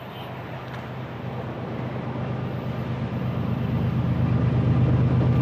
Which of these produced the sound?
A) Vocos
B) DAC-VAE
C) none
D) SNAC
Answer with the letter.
C